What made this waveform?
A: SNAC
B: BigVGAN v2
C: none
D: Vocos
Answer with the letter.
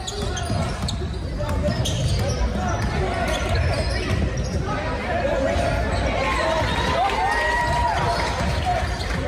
C